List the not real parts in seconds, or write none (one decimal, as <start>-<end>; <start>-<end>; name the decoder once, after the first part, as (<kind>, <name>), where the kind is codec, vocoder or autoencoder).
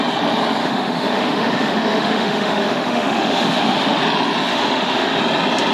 0.6-4.0 (autoencoder, DAC-VAE); 4.5-5.2